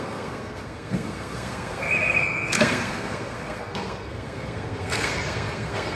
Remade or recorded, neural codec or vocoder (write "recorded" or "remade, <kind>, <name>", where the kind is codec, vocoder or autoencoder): remade, codec, SNAC